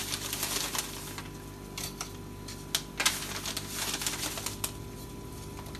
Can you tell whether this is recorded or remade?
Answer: recorded